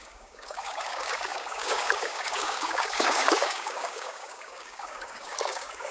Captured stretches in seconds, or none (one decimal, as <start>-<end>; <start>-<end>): none

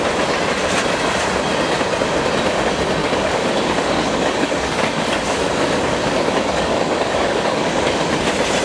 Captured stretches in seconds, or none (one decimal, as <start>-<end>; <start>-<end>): 0.0-3.0; 8.1-8.6

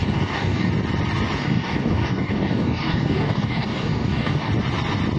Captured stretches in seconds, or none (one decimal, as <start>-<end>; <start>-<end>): 0.7-1.4; 4.5-5.2

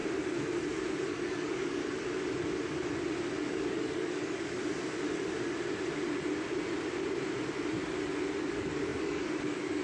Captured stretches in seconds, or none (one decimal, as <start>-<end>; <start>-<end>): 0.0-1.1; 1.8-3.6; 4.6-8.4

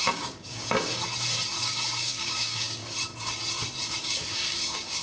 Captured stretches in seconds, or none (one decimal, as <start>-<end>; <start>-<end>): 0.6-1.6; 2.8-4.0